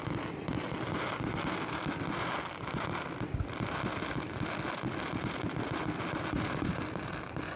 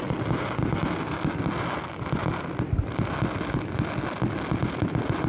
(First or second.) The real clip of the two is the second